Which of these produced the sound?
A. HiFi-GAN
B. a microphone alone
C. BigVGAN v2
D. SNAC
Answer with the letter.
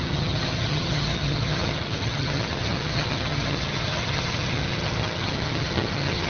A